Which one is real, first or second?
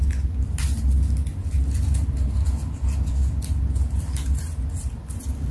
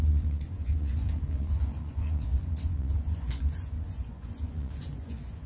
first